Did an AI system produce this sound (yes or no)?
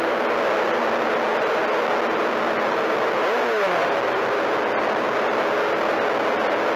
no